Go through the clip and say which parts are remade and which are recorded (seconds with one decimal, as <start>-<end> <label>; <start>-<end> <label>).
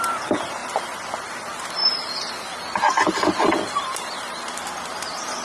0.0-0.6 recorded; 0.6-1.3 remade; 1.3-1.8 recorded; 1.8-4.5 remade; 4.5-5.4 recorded